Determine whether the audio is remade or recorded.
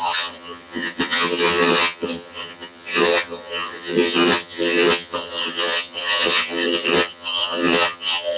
remade